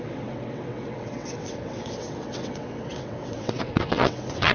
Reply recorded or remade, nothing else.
remade